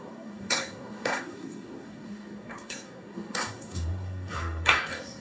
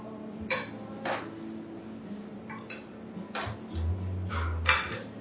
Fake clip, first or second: first